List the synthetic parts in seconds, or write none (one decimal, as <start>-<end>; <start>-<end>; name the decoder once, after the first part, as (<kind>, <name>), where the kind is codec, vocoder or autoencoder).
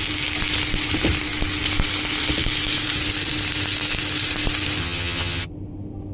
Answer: 4.8-5.5 (vocoder, HiFi-GAN)